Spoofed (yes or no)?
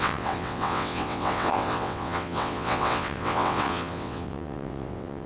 yes